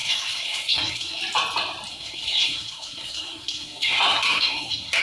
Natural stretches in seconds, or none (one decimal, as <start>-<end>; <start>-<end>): 1.2-1.9